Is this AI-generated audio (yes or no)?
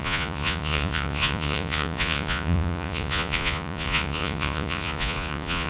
yes